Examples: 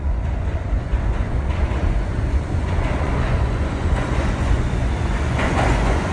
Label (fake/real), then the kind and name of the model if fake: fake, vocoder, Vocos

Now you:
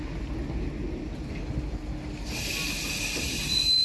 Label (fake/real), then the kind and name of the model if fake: real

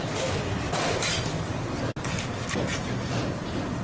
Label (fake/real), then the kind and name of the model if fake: real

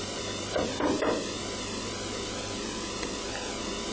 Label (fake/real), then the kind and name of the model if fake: real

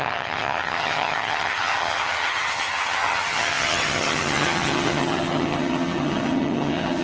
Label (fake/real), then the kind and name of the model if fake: fake, vocoder, HiFi-GAN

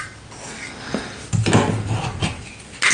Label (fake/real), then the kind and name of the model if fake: real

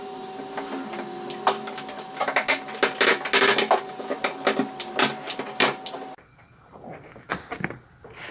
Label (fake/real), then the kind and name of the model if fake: real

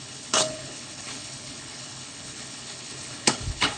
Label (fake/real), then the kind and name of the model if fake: fake, codec, HILCodec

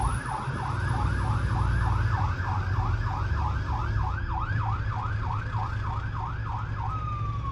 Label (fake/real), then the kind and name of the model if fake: real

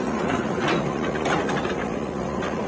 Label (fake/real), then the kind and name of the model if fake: fake, vocoder, Vocos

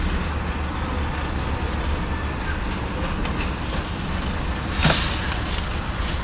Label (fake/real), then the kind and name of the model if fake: real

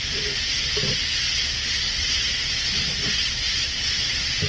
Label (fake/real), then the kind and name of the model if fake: real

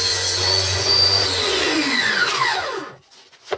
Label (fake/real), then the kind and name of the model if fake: fake, vocoder, Vocos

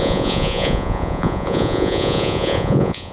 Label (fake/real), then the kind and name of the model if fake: fake, vocoder, Vocos